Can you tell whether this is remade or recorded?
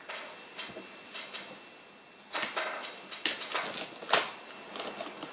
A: recorded